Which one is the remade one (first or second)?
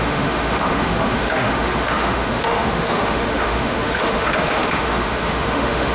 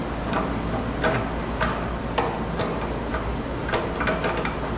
first